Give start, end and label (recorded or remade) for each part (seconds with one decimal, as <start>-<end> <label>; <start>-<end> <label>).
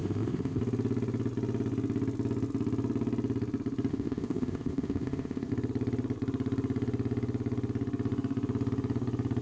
0.0-0.6 remade; 0.6-3.9 recorded; 3.9-5.5 remade; 5.5-9.4 recorded